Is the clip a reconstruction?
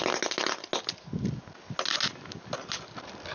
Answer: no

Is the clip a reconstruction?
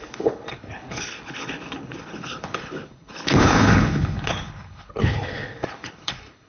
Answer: yes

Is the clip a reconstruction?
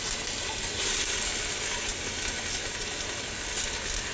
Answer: no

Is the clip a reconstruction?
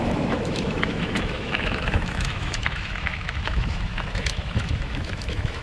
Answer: yes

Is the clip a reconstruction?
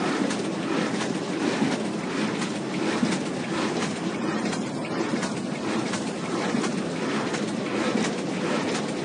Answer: no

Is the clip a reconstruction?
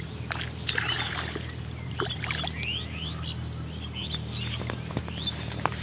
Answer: no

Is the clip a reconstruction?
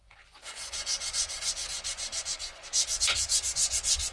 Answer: yes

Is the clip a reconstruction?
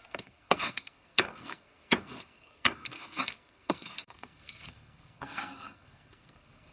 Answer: yes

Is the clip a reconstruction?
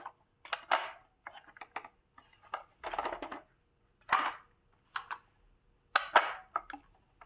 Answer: no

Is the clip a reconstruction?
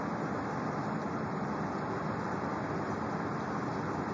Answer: no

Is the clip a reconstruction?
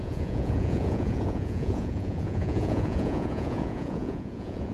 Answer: yes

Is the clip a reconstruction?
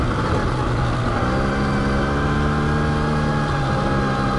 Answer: no